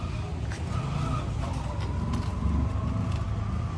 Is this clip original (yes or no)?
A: yes